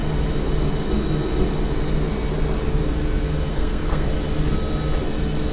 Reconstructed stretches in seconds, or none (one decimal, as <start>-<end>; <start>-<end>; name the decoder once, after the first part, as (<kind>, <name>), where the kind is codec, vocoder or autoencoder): 3.5-4.1 (codec, SNAC)